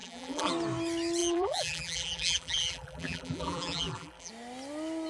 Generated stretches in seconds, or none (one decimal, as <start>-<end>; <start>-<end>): 0.0-0.5; 1.2-4.3